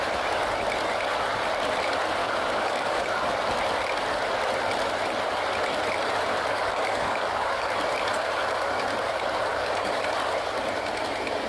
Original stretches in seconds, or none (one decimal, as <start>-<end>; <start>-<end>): 0.0-2.2; 3.0-6.5; 7.7-9.5; 10.0-11.5